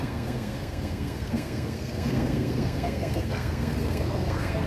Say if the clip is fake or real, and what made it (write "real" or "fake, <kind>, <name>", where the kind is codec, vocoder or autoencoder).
fake, codec, SNAC